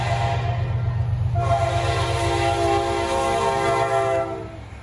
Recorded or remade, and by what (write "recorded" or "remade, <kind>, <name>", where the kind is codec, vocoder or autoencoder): recorded